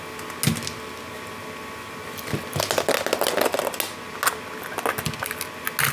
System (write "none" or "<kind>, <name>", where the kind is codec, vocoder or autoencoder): none